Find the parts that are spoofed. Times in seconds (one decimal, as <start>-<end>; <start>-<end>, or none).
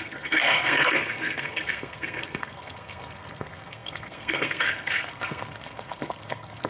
0.0-6.7